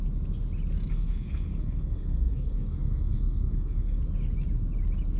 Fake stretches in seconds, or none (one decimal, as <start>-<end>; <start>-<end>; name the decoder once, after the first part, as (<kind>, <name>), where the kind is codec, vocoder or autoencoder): 0.9-4.0 (codec, SNAC)

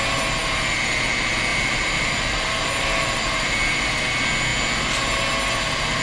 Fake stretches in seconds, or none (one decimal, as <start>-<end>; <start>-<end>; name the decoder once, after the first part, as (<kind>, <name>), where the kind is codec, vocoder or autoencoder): 1.5-3.9 (vocoder, BigVGAN v2)